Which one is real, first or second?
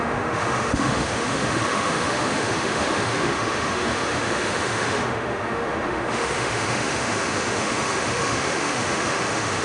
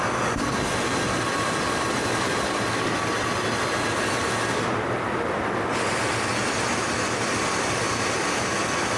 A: second